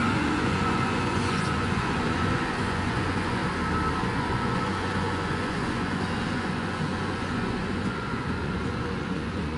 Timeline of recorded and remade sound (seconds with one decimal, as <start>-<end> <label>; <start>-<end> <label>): 0.0-3.4 remade; 3.4-4.0 recorded; 4.0-9.6 remade